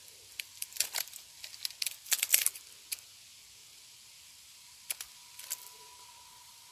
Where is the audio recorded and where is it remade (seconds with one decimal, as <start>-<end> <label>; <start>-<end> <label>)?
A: 0.0-6.7 recorded